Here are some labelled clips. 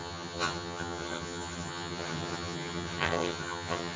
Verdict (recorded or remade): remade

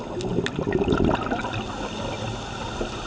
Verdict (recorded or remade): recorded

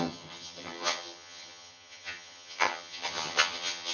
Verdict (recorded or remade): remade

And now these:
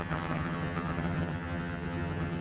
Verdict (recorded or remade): remade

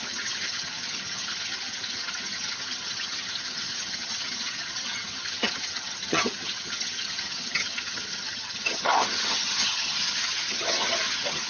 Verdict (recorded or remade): remade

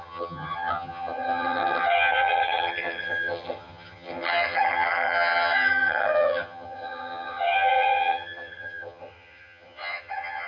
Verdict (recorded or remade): remade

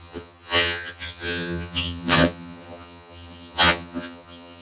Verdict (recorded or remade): remade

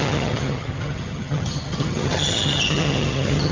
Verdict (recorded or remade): remade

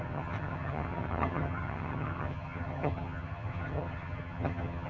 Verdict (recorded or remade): remade